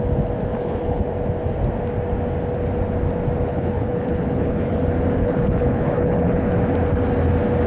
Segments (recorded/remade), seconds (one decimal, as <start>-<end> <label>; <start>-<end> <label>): 0.0-0.5 recorded; 0.5-1.0 remade; 1.0-3.5 recorded; 3.5-4.8 remade; 4.8-5.2 recorded; 5.2-6.5 remade; 6.5-7.7 recorded